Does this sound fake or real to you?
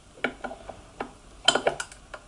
real